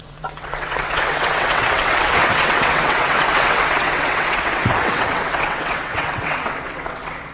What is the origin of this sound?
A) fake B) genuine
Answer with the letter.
A